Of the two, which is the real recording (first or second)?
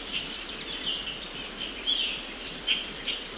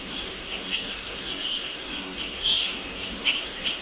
first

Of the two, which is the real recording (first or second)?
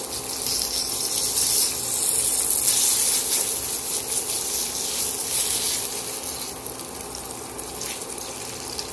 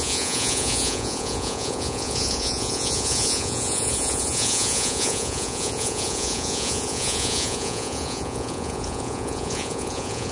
first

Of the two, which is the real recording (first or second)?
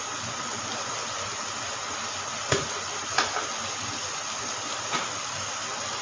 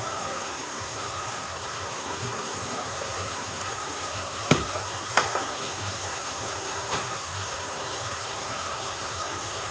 first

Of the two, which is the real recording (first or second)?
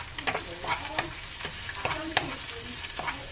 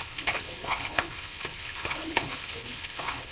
first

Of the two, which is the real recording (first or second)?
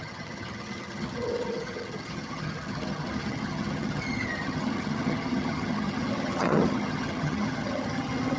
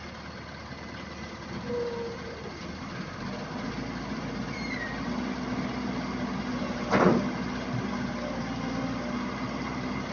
second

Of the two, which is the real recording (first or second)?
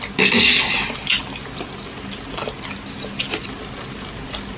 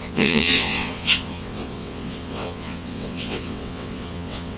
first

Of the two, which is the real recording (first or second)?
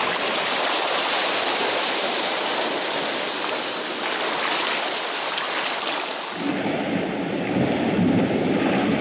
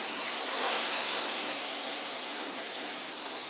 first